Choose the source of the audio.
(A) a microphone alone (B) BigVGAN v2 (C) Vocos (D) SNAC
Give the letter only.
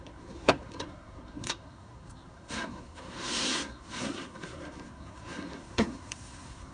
D